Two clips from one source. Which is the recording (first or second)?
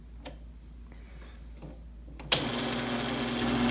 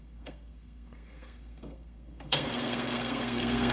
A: first